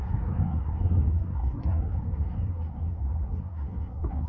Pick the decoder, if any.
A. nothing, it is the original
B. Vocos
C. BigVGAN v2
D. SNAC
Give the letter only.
D